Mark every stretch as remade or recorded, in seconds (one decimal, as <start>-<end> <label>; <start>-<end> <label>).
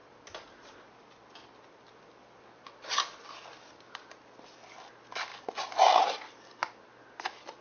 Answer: 0.0-7.6 recorded